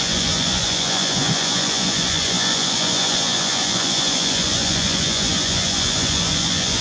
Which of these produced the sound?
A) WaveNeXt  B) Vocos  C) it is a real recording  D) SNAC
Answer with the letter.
B